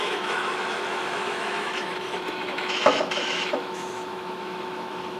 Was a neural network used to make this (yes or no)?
yes